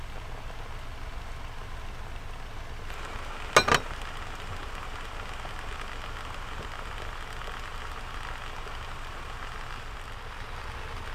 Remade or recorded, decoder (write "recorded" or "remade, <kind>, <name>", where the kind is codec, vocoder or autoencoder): recorded